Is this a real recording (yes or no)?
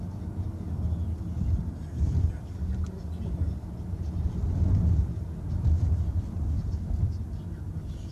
yes